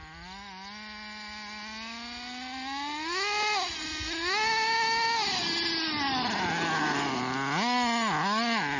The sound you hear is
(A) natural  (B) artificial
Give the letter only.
A